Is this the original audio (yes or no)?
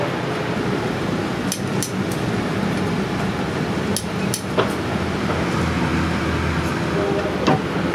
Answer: yes